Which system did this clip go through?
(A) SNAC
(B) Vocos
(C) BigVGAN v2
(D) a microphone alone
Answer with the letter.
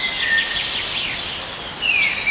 D